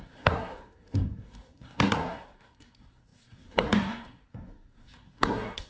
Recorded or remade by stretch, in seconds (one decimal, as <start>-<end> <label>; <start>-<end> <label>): 0.0-5.7 remade